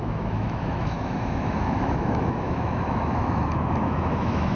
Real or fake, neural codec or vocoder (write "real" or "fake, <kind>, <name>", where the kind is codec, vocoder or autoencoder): fake, autoencoder, DAC-VAE